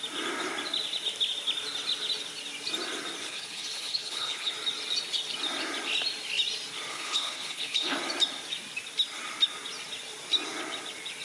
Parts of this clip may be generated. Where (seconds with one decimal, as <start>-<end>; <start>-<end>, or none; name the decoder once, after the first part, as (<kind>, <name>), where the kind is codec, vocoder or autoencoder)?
3.2-4.5 (codec, HILCodec); 6.9-8.0